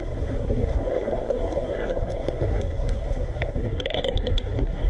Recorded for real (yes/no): no